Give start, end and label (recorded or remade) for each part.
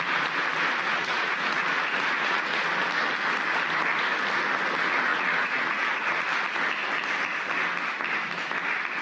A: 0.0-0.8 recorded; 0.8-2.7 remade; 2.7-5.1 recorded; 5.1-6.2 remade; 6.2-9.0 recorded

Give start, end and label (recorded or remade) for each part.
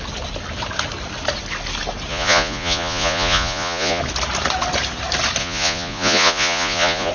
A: 0.0-2.1 recorded; 2.1-4.0 remade; 4.0-5.4 recorded; 5.4-7.1 remade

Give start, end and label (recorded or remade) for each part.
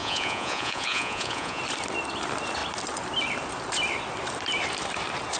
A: 0.0-1.6 remade; 1.6-5.4 recorded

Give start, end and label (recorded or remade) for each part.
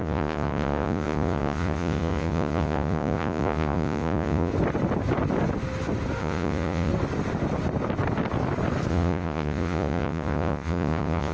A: 0.0-4.5 remade; 4.5-6.2 recorded; 6.2-6.9 remade; 6.9-8.9 recorded; 8.9-11.3 remade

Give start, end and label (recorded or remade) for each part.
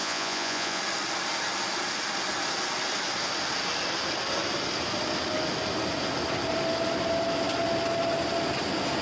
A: 0.0-0.8 remade; 0.8-9.0 recorded